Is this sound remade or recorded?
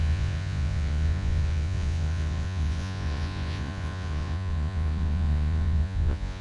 remade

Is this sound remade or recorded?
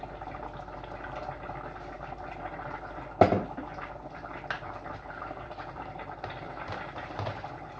recorded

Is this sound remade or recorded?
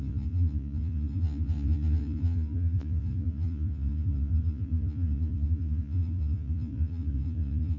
remade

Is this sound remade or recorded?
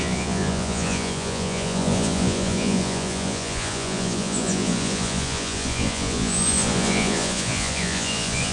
remade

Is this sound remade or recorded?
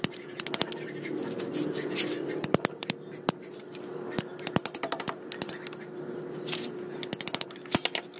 recorded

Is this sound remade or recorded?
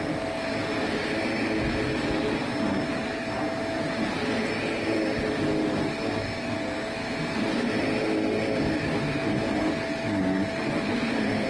recorded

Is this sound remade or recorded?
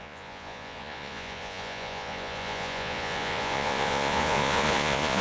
remade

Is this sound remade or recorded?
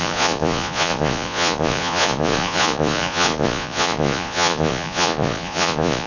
remade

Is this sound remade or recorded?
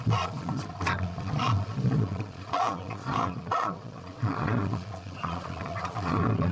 remade